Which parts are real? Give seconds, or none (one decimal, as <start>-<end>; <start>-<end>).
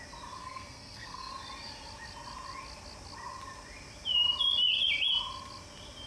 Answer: 0.0-0.4; 1.3-6.1